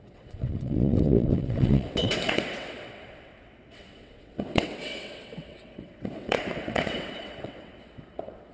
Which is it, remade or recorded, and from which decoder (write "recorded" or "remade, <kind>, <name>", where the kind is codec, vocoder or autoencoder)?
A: remade, vocoder, WaveNeXt